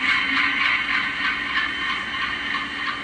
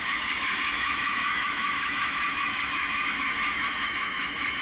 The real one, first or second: first